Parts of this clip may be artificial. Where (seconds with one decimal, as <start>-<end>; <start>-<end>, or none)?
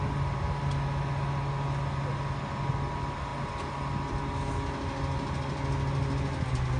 none